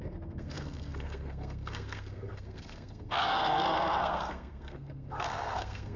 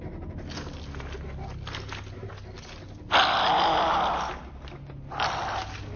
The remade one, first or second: first